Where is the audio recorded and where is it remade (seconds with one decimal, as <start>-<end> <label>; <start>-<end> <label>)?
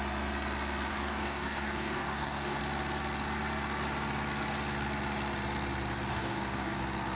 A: 0.0-0.9 recorded; 0.9-2.6 remade; 2.6-6.1 recorded; 6.1-6.8 remade; 6.8-7.2 recorded